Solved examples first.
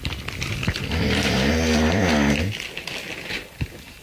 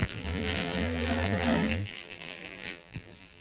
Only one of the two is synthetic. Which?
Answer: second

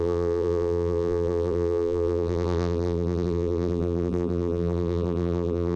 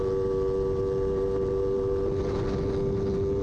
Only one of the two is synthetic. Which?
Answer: first